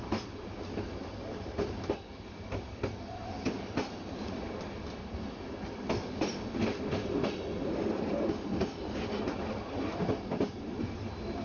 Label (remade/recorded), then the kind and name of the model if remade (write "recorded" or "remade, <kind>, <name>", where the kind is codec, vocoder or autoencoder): recorded